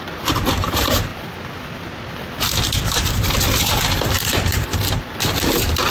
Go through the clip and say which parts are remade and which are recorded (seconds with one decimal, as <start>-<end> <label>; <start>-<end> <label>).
0.0-1.1 remade; 1.1-4.0 recorded; 4.0-4.7 remade; 4.7-5.5 recorded; 5.5-5.9 remade